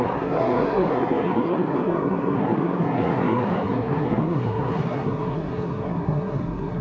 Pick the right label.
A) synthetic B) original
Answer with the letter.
A